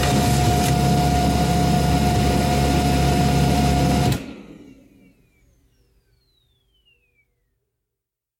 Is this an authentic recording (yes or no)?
yes